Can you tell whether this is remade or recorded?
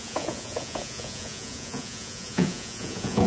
remade